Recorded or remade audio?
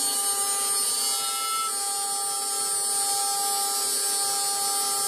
recorded